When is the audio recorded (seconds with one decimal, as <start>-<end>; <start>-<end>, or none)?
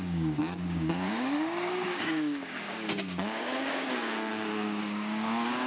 none